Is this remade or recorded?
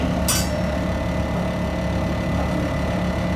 recorded